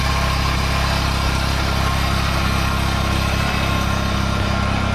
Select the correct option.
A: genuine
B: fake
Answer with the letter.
A